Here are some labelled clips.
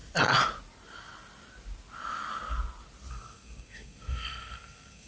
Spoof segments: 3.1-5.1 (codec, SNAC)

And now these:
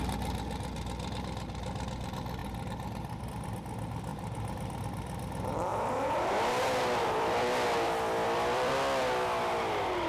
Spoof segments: 4.1-4.8 (vocoder, BigVGAN v2); 5.7-8.7